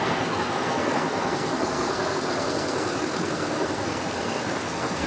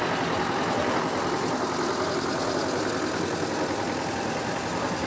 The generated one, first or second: first